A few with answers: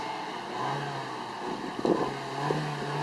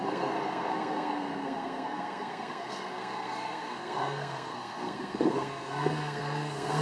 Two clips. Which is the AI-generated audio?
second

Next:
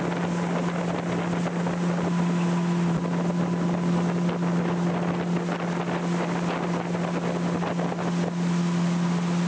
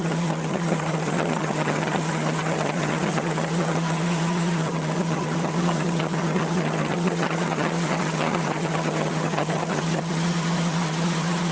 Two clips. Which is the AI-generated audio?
second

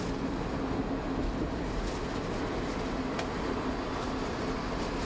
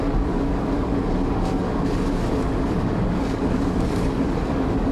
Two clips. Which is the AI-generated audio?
second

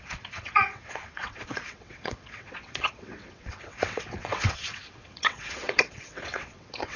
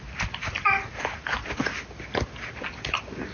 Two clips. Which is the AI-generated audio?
first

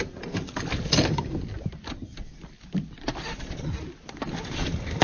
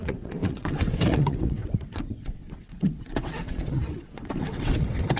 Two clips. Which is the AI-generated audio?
second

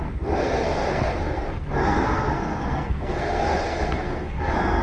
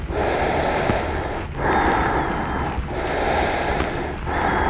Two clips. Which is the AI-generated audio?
first